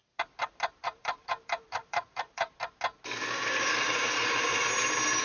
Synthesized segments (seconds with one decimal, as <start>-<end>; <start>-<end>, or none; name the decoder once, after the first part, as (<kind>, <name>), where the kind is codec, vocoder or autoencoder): 0.8-2.5 (vocoder, BigVGAN v2)